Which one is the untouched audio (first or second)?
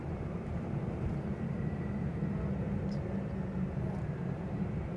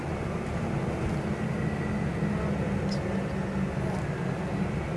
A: second